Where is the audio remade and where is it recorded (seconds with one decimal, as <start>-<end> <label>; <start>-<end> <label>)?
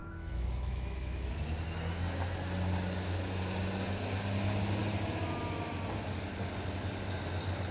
0.0-1.3 remade; 1.3-7.7 recorded